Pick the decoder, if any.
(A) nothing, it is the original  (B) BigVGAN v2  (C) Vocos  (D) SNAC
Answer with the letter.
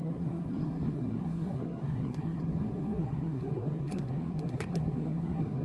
D